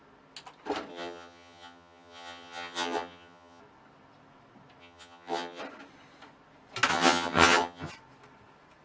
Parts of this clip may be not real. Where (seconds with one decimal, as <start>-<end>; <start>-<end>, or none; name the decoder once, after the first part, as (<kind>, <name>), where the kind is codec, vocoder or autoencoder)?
0.9-3.6 (vocoder, HiFi-GAN); 4.8-5.6; 6.9-7.9